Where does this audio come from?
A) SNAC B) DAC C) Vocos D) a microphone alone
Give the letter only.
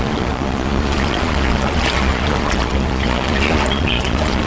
C